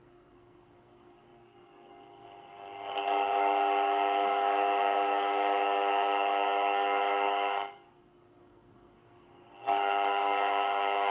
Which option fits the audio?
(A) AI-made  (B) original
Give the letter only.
A